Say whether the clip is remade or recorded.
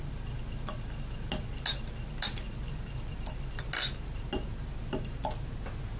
recorded